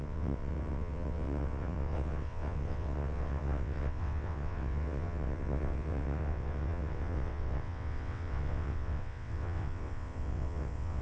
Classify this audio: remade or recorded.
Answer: remade